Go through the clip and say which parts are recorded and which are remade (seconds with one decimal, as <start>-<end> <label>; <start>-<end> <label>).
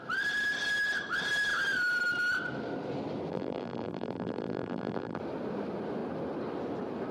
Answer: 0.0-3.3 recorded; 3.3-5.2 remade; 5.2-7.1 recorded